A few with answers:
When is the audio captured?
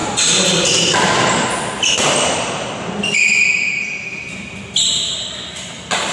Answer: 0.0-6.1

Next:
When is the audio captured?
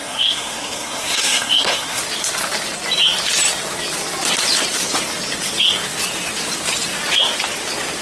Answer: 2.0-8.0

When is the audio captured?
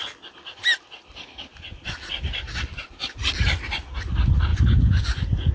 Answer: 0.0-4.5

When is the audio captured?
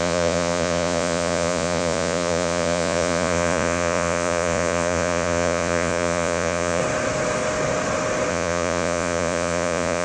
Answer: 6.8-8.3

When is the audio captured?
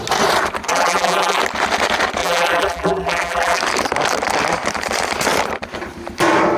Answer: 0.0-0.7; 1.4-2.2; 3.6-6.6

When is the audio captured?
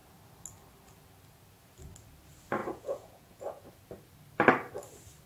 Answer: 0.0-2.6; 3.6-5.3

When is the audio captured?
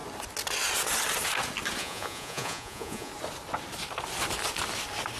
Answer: 0.0-1.8; 3.1-5.2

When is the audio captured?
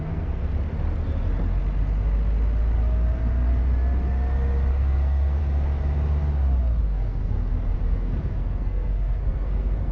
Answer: 0.5-4.7; 5.4-6.8